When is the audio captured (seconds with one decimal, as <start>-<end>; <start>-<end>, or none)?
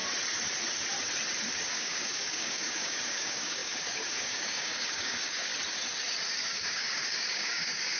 0.0-1.7; 5.5-6.4